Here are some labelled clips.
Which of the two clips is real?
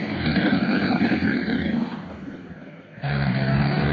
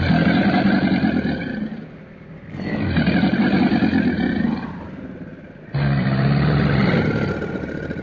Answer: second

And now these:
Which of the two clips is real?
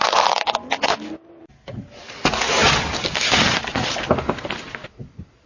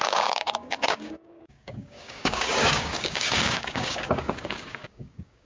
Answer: first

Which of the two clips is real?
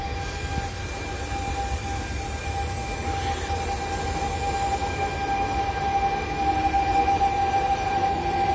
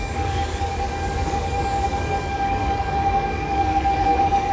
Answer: first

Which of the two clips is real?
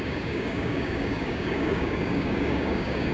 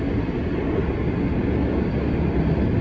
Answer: second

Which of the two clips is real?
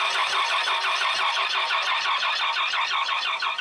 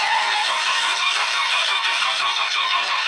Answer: first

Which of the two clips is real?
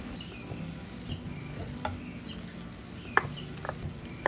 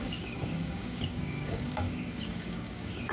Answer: first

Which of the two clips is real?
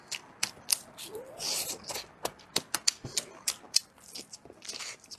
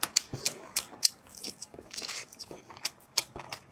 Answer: first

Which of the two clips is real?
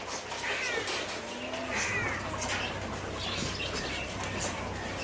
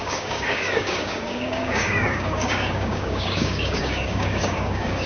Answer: first